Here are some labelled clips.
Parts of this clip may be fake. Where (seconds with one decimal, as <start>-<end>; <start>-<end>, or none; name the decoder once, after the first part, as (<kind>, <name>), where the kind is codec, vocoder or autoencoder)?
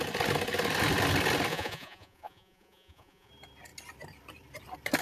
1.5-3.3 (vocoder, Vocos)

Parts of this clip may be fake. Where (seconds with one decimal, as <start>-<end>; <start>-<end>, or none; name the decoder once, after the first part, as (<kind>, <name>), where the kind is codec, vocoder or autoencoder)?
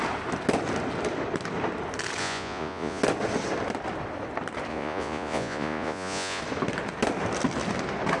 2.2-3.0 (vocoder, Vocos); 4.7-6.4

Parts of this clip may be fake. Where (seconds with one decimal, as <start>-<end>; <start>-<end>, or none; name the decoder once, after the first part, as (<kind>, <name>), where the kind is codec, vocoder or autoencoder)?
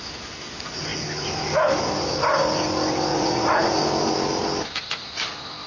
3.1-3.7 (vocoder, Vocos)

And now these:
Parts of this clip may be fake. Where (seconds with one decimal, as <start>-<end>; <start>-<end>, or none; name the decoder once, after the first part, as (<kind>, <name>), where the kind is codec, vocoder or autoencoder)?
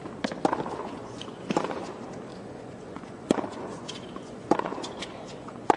0.8-1.9 (vocoder, Vocos); 2.3-5.8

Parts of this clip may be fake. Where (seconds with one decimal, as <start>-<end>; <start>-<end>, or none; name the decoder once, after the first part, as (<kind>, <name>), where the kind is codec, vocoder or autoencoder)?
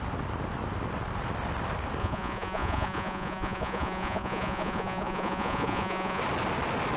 2.0-6.2 (vocoder, Vocos)